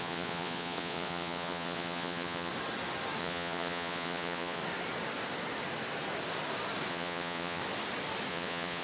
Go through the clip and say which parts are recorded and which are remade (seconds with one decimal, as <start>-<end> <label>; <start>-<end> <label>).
0.0-2.5 remade; 2.5-3.2 recorded; 3.2-4.6 remade; 4.6-6.9 recorded; 6.9-7.6 remade; 7.6-8.3 recorded; 8.3-8.8 remade